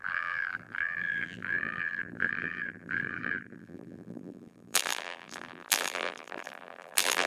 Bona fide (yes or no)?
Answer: no